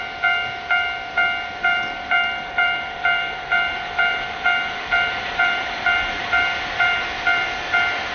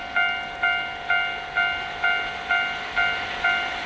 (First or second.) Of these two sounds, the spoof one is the first